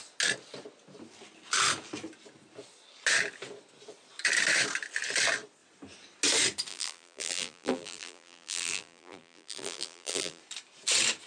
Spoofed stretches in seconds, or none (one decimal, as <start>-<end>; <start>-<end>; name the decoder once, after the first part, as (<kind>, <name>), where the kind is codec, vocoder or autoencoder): 6.7-10.4 (vocoder, BigVGAN v2)